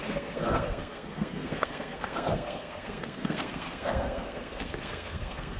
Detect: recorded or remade remade